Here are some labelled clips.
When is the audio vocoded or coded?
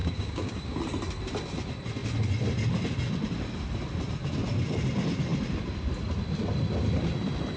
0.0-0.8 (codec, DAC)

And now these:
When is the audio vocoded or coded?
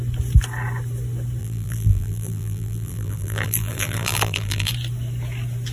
1.4-4.7 (vocoder, BigVGAN v2)